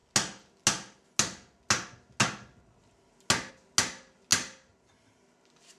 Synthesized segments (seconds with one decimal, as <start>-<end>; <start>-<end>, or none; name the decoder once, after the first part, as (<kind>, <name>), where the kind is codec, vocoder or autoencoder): none